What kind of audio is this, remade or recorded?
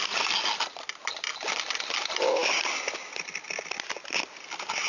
recorded